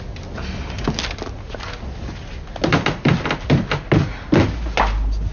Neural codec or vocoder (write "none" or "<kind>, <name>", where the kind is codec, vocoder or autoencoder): none